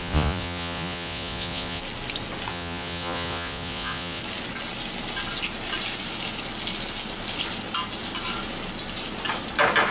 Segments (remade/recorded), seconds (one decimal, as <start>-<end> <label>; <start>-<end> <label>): 0.0-1.8 remade; 1.8-2.5 recorded; 2.5-4.2 remade; 4.2-9.9 recorded